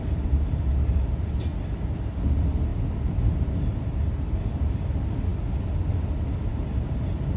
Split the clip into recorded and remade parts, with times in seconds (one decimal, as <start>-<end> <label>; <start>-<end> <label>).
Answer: 0.0-7.4 recorded